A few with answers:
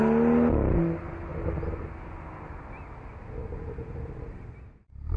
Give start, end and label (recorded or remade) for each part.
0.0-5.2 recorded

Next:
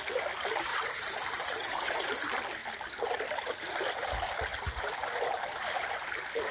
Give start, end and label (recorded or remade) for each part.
0.0-6.5 recorded